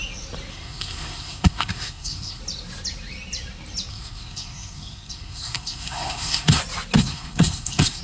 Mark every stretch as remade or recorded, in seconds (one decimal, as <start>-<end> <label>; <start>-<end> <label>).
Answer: 0.0-0.5 recorded; 0.5-2.4 remade; 2.4-3.9 recorded; 3.9-6.6 remade; 6.6-7.0 recorded; 7.0-8.0 remade